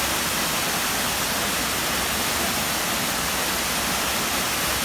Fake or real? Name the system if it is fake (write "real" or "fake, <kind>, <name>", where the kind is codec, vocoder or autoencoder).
real